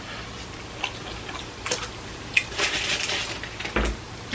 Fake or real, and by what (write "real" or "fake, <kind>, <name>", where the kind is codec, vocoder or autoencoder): real